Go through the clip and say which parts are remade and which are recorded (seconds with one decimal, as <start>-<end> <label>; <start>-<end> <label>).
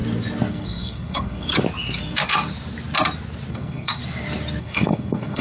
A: 0.0-0.5 recorded; 0.5-1.5 remade; 1.5-3.5 recorded; 3.5-4.0 remade; 4.0-4.6 recorded; 4.6-5.4 remade